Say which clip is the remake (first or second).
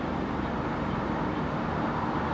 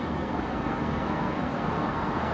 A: second